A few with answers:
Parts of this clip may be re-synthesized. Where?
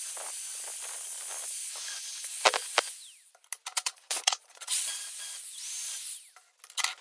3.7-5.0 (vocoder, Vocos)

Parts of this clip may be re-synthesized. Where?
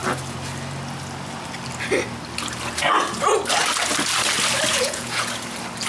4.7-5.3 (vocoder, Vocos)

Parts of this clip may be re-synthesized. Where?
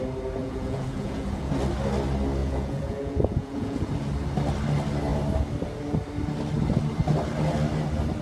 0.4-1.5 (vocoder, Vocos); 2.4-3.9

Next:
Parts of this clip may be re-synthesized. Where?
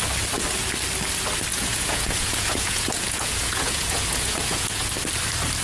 1.5-4.9 (vocoder, Vocos)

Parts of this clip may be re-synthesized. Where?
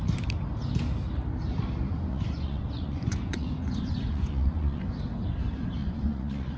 2.1-4.8 (vocoder, Vocos); 5.8-6.6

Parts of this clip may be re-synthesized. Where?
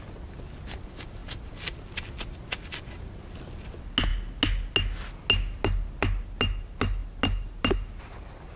none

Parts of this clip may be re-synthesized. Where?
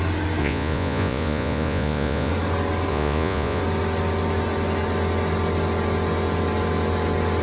0.4-2.3 (vocoder, Vocos); 2.9-3.6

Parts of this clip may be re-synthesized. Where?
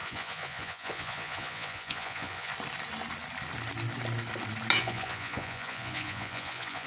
0.0-2.5 (vocoder, Vocos); 4.8-6.9